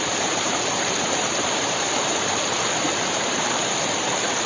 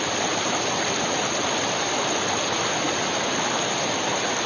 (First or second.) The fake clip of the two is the first